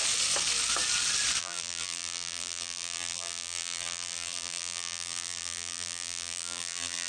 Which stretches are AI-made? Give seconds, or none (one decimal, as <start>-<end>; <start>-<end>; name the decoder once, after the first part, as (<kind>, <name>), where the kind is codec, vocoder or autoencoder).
1.4-7.1 (vocoder, BigVGAN v2)